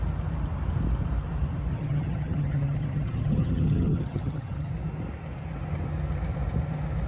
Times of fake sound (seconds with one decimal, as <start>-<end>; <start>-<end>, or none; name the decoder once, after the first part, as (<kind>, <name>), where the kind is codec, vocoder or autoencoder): 1.7-4.7 (vocoder, HiFi-GAN)